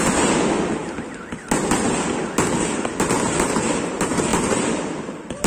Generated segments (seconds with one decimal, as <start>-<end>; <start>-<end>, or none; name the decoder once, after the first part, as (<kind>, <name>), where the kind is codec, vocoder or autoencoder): 4.3-5.5 (vocoder, BigVGAN v2)